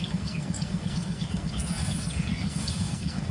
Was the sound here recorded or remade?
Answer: remade